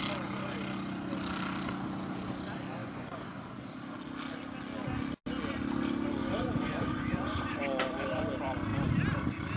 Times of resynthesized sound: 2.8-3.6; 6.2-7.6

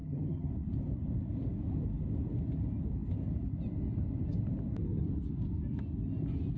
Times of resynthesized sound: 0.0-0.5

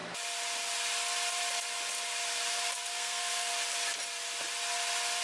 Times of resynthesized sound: 2.9-3.5

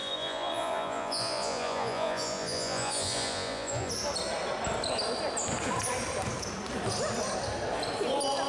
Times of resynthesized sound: 0.0-3.9

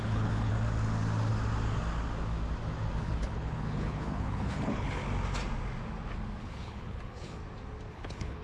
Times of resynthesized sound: 0.0-0.5; 3.0-5.0; 6.4-7.4; 7.9-8.4